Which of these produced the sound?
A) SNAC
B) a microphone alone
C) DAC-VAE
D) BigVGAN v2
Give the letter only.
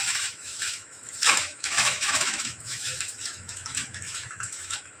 C